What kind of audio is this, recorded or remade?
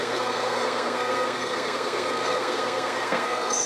remade